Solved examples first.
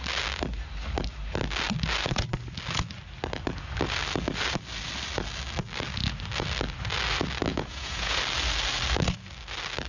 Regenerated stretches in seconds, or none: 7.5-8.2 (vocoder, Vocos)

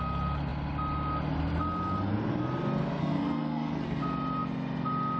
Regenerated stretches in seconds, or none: 3.0-4.0 (codec, SNAC)

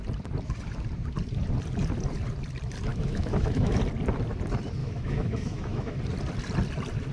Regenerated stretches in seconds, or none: 2.9-3.8 (autoencoder, DAC-VAE); 4.8-6.0

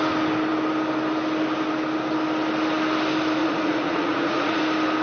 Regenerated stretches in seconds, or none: 3.4-4.6 (vocoder, Vocos)